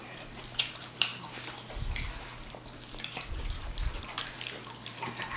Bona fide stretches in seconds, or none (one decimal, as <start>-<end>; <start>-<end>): none